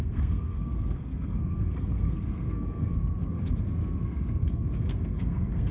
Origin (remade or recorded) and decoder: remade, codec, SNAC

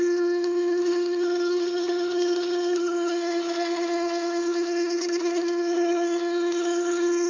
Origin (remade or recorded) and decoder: remade, codec, SNAC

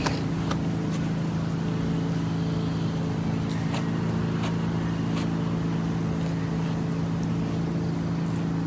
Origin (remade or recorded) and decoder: recorded